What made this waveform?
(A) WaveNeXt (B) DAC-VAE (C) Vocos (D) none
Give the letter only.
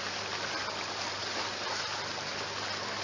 D